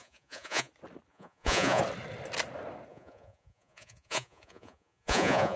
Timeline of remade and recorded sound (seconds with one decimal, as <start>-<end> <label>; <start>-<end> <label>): 0.0-0.7 remade; 0.7-1.1 recorded; 1.1-1.8 remade; 1.8-2.9 recorded; 2.9-5.6 remade